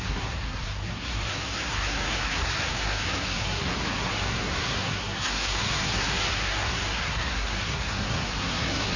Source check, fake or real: fake